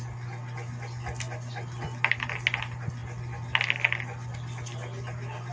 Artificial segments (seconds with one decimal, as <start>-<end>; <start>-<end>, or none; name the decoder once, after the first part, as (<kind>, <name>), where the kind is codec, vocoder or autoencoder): none